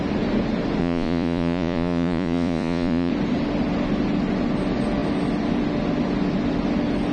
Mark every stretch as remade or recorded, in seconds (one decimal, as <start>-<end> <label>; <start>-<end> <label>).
0.0-0.8 recorded; 0.8-3.1 remade; 3.1-7.1 recorded